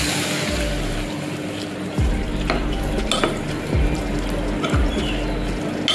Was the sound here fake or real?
real